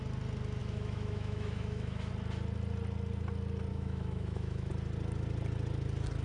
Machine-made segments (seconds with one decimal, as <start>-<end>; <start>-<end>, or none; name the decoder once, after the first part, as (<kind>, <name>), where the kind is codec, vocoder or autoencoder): 0.6-2.1 (autoencoder, DAC-VAE); 3.7-4.7